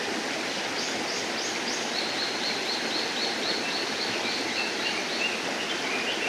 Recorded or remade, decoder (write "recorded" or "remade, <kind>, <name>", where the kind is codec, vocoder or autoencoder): recorded